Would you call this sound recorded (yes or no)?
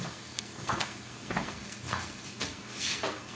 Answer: no